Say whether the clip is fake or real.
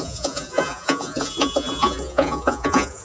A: fake